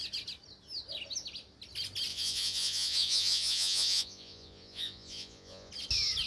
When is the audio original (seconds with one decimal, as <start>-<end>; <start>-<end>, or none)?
0.0-2.1; 5.7-6.3